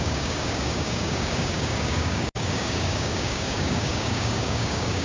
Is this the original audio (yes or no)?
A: no